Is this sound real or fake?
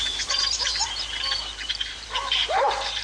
fake